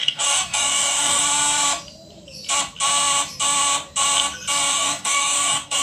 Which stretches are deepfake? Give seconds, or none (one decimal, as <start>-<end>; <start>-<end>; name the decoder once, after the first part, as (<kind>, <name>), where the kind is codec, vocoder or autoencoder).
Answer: 0.0-1.2 (codec, DAC); 4.7-5.8